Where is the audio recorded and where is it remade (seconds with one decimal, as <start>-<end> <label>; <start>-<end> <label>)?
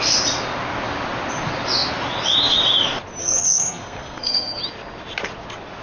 0.0-3.2 recorded; 3.2-4.6 remade; 4.6-5.8 recorded